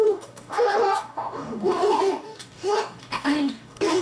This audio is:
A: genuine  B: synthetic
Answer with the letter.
B